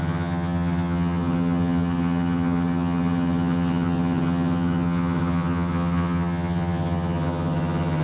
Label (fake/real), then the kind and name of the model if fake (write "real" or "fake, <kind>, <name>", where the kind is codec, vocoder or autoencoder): fake, vocoder, HiFi-GAN